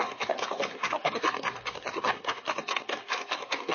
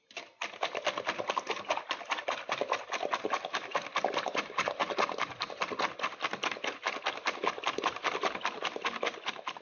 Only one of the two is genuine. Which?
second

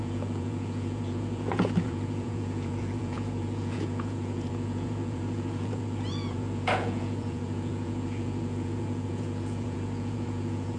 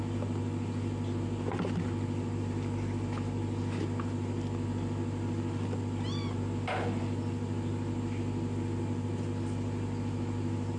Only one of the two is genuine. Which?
second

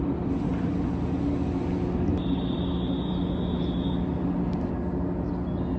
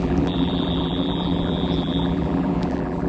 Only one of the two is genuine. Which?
first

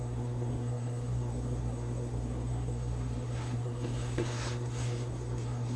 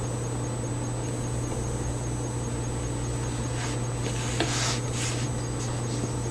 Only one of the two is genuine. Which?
second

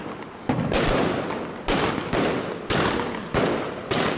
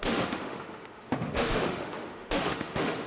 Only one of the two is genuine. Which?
first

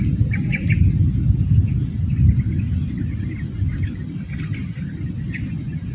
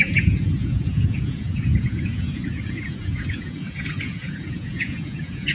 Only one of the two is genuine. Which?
first